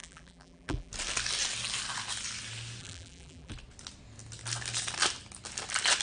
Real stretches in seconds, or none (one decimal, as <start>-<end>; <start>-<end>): 0.9-2.8; 3.5-6.0